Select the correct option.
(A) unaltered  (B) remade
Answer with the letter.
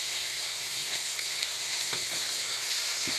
B